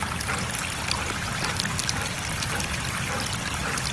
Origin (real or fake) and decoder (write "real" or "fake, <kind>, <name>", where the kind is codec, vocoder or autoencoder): real